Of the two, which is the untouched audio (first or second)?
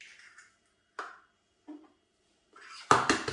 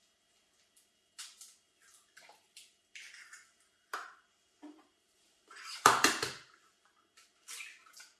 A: first